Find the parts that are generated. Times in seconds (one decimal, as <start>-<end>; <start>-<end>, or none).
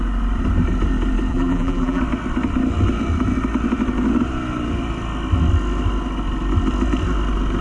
1.3-2.0